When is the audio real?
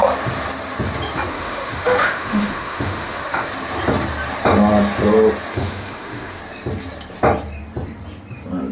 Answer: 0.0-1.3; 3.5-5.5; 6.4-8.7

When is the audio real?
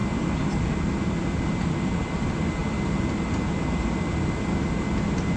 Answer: 0.0-5.4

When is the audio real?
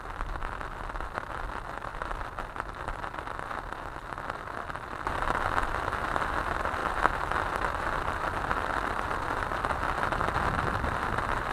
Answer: 0.0-11.5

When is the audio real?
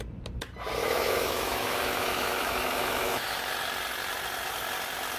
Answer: 0.0-0.8; 3.4-5.2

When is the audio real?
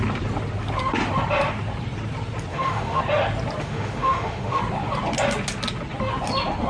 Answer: 0.0-2.5; 3.0-3.6; 4.6-6.7